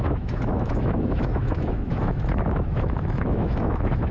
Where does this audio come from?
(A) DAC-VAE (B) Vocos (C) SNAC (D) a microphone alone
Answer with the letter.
A